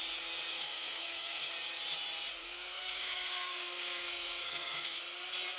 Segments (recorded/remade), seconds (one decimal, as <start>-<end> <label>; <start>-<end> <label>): 0.0-0.5 recorded; 0.5-1.5 remade; 1.5-2.4 recorded; 2.4-5.0 remade; 5.0-5.6 recorded